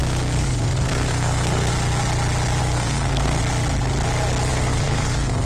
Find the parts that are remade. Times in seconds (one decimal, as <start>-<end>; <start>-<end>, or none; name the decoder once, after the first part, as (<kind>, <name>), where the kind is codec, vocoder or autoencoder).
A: 0.0-1.7 (codec, SNAC); 2.6-3.4; 4.5-5.4